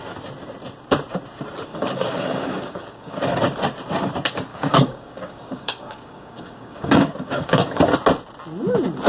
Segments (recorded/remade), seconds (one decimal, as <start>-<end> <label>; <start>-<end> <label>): 0.0-1.7 recorded; 1.7-3.4 remade; 3.4-4.5 recorded; 4.5-7.8 remade; 7.8-9.1 recorded